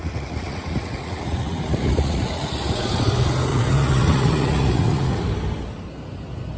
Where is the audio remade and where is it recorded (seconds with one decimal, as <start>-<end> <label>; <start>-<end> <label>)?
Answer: 0.0-2.6 remade; 2.6-3.5 recorded; 3.5-5.2 remade; 5.2-6.6 recorded